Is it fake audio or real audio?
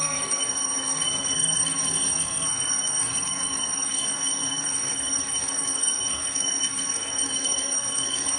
fake